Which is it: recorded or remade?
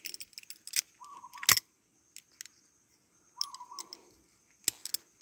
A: recorded